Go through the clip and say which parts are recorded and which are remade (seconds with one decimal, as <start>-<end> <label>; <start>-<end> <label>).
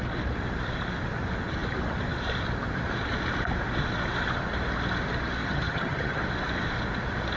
0.0-5.4 recorded; 5.4-6.2 remade; 6.2-7.4 recorded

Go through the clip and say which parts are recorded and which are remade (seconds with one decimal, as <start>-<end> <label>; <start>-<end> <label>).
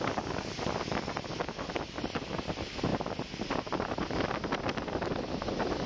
0.0-5.9 recorded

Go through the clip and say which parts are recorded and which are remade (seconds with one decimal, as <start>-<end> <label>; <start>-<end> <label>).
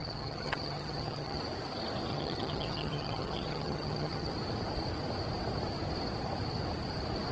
0.0-1.4 remade; 1.4-2.1 recorded; 2.1-4.3 remade; 4.3-7.3 recorded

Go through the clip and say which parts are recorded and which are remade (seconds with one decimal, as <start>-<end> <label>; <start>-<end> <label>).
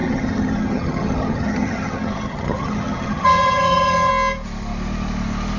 0.0-4.1 remade; 4.1-5.6 recorded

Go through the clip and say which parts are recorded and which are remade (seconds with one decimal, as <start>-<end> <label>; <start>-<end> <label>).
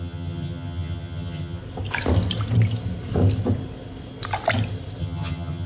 0.0-1.6 remade; 1.6-5.0 recorded; 5.0-5.7 remade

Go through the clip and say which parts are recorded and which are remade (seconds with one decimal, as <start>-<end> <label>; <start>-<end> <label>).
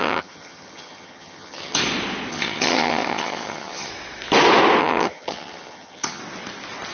0.0-1.8 remade; 1.8-2.3 recorded; 2.3-3.9 remade; 3.9-4.8 recorded; 4.8-6.2 remade; 6.2-6.9 recorded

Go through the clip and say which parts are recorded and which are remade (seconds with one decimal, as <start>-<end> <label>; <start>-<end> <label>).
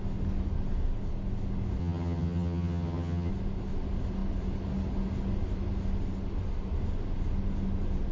0.0-1.8 recorded; 1.8-3.3 remade; 3.3-8.1 recorded